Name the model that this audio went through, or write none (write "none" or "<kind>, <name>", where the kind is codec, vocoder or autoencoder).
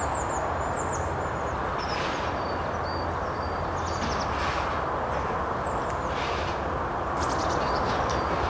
none